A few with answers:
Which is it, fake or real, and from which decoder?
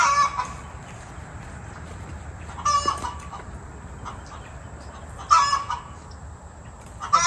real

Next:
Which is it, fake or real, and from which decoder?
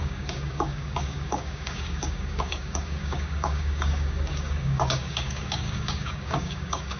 fake, codec, DAC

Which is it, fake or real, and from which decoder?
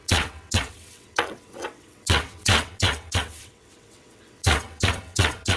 fake, vocoder, WaveNeXt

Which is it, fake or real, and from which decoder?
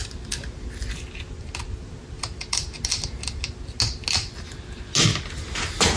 real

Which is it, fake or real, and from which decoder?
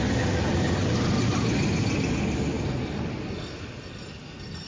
real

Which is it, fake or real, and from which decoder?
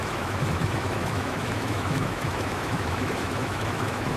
fake, autoencoder, DAC-VAE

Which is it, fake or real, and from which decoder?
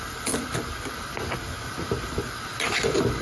real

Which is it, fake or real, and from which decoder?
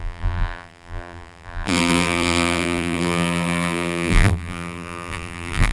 fake, vocoder, BigVGAN v2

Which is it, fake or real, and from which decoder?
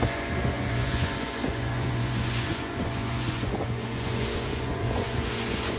fake, vocoder, Vocos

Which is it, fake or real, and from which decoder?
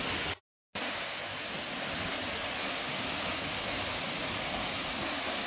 real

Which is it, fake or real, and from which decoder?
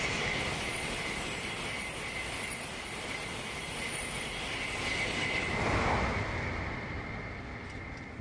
real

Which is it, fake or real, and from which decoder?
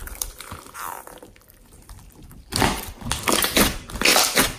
fake, vocoder, BigVGAN v2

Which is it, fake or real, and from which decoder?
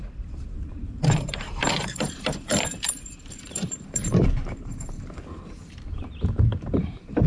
fake, vocoder, BigVGAN v2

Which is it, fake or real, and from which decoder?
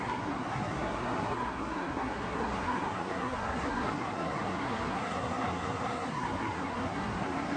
fake, codec, SNAC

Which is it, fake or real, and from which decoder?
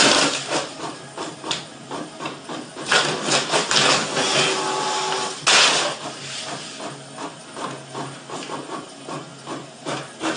real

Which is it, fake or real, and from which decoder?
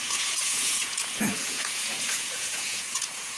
fake, vocoder, Vocos